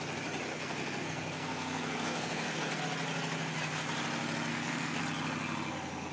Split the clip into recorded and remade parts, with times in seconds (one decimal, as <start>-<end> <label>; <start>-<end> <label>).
0.0-0.5 recorded; 0.5-2.8 remade; 2.8-4.5 recorded; 4.5-5.0 remade; 5.0-6.1 recorded

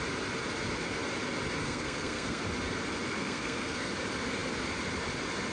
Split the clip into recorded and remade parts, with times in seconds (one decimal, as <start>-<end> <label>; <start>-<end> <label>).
0.0-1.6 recorded; 1.6-2.4 remade; 2.4-3.2 recorded; 3.2-3.9 remade; 3.9-5.5 recorded